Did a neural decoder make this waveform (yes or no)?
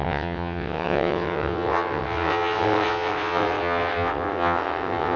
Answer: yes